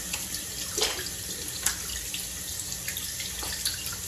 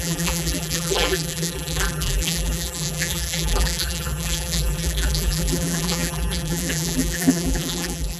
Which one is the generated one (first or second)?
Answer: second